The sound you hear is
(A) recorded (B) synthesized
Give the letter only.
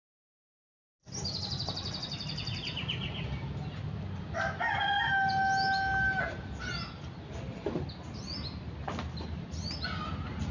A